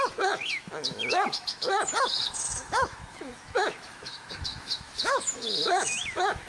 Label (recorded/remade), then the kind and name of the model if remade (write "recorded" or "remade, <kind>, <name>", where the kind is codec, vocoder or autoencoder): remade, autoencoder, DAC-VAE